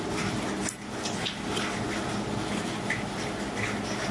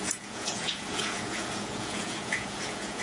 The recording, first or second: first